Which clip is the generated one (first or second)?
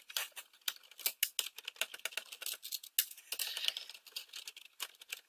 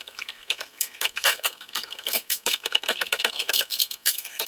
second